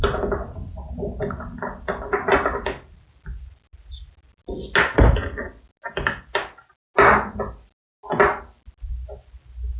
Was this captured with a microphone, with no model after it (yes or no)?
yes